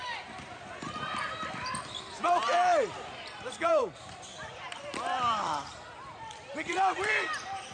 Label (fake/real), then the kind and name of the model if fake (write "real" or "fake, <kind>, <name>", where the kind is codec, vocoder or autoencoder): fake, vocoder, BigVGAN v2